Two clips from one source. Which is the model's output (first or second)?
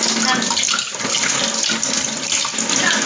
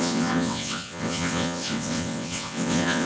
second